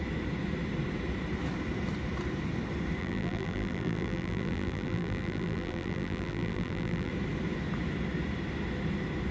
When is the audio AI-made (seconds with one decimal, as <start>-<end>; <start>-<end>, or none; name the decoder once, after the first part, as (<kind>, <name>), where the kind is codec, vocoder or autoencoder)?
3.0-7.1 (vocoder, BigVGAN v2)